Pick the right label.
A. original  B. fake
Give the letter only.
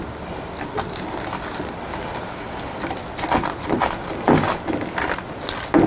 A